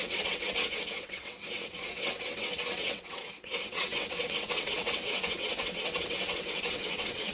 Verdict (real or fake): fake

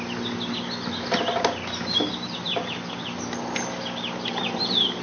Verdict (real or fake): real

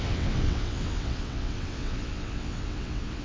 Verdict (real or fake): fake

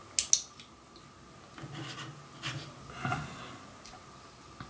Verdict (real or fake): real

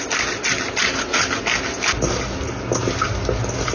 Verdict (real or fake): real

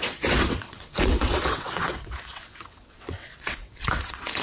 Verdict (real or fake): fake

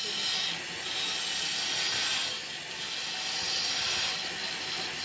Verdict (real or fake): real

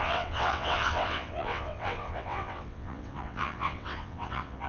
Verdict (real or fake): fake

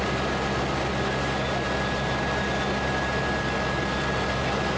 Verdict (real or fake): real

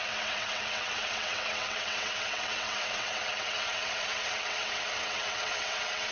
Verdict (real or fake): fake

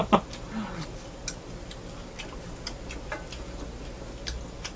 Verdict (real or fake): real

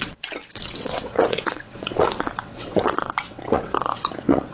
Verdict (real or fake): fake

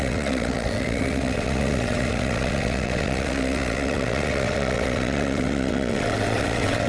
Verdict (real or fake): fake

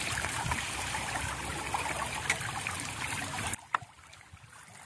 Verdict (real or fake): real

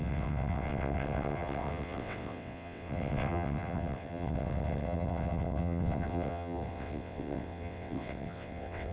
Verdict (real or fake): fake